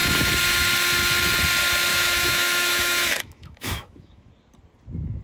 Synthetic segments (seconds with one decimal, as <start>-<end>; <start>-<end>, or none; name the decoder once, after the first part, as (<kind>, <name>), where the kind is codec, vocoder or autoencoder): 1.9-4.3 (autoencoder, DAC-VAE)